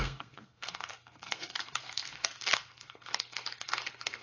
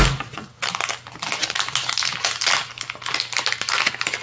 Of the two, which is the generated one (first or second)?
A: first